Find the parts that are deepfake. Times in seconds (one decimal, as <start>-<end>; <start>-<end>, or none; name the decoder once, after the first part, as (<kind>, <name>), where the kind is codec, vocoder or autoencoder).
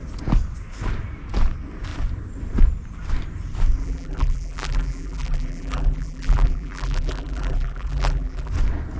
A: 3.8-8.5 (vocoder, BigVGAN v2)